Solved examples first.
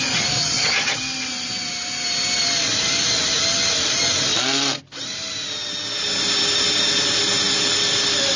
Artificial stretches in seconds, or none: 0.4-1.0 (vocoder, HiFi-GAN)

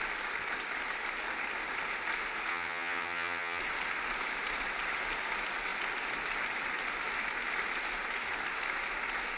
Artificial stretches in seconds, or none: 2.5-3.6 (vocoder, HiFi-GAN)